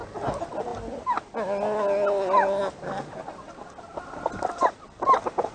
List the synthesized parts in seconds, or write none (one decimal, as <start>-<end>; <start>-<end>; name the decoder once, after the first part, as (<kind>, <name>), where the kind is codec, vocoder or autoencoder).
none